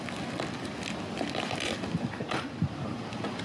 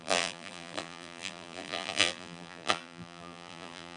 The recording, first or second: first